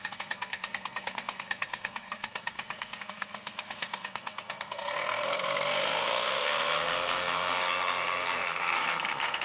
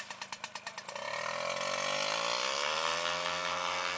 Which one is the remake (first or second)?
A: first